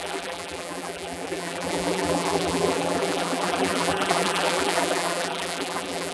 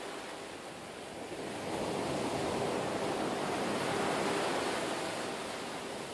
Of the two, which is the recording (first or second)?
second